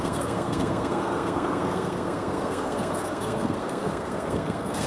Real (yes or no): no